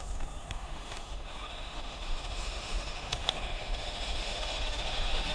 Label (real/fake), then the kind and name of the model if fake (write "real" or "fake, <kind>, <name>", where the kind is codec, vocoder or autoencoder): fake, autoencoder, DAC-VAE